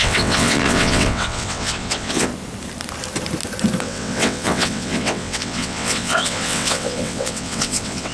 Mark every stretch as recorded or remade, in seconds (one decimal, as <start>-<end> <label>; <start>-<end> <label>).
0.0-2.3 remade; 2.3-3.8 recorded; 3.8-8.1 remade